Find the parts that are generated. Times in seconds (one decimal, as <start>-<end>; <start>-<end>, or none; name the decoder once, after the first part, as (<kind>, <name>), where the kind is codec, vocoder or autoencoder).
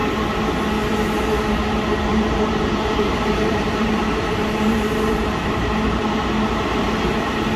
2.1-6.1 (vocoder, BigVGAN v2)